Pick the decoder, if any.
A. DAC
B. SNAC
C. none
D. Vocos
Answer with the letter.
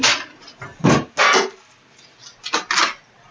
C